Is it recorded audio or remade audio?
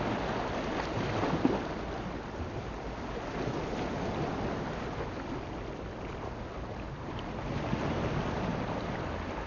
recorded